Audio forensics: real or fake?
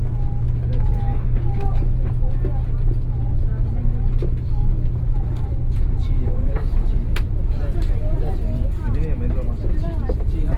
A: real